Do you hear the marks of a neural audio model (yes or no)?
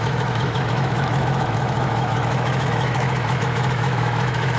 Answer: yes